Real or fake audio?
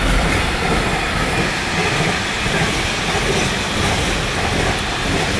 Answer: real